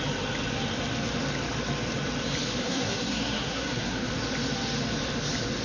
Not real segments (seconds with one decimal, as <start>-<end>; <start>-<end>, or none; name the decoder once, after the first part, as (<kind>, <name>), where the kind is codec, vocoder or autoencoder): 2.6-4.1 (codec, SNAC)